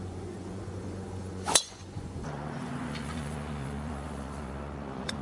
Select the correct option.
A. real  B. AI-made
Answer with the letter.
B